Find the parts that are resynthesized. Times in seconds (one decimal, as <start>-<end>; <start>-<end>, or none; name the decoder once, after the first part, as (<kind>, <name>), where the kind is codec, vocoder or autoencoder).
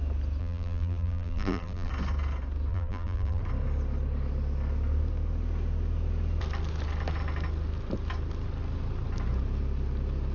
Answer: 0.4-1.9 (vocoder, BigVGAN v2); 2.7-3.4